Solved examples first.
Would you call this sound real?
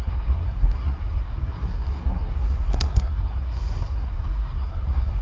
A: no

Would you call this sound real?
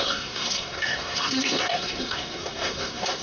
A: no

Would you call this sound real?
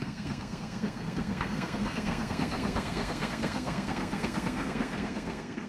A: no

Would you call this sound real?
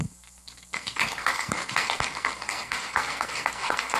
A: no